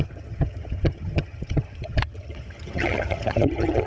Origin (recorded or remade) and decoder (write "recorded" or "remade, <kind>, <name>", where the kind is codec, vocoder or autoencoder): remade, vocoder, HiFi-GAN